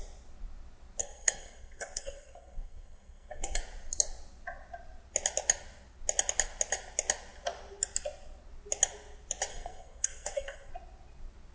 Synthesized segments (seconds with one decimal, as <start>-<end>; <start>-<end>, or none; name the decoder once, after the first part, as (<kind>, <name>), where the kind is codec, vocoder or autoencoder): 1.0-3.6 (codec, SNAC); 9.5-10.7